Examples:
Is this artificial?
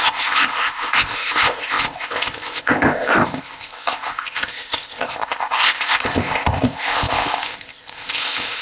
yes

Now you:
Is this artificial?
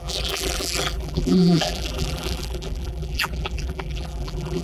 yes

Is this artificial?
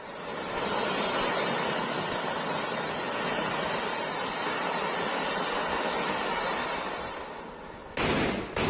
no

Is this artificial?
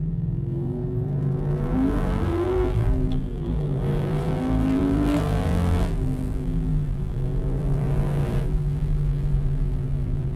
yes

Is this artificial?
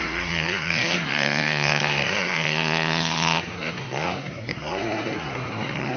yes